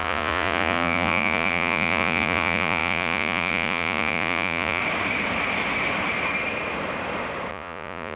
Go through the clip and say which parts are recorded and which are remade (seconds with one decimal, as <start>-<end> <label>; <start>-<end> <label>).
0.0-4.8 remade; 4.8-7.5 recorded; 7.5-8.2 remade